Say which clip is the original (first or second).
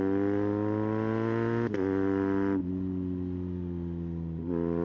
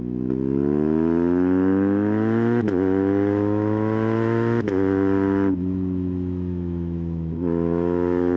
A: first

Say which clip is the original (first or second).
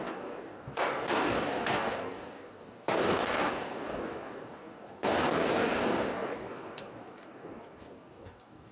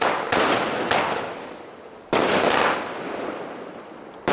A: second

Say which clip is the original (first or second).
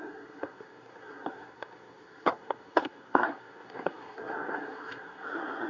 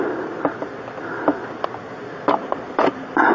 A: second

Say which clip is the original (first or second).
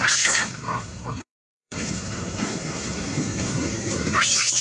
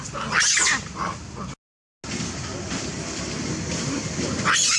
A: second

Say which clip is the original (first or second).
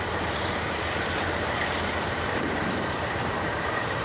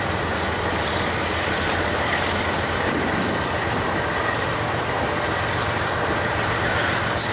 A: second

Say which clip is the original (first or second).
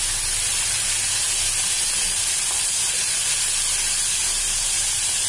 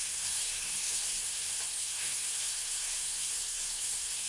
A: first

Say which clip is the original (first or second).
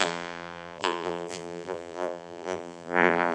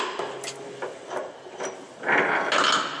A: second